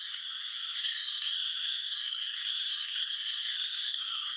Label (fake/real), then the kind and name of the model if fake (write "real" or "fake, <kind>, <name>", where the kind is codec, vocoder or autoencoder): fake, codec, SNAC